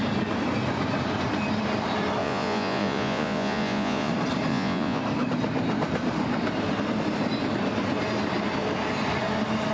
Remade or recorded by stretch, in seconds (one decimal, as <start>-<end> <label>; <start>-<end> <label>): 0.0-2.2 recorded; 2.2-4.1 remade; 4.1-4.5 recorded; 4.5-5.0 remade; 5.0-9.7 recorded